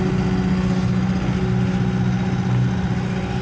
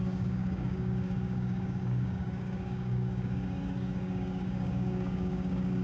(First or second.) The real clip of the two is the first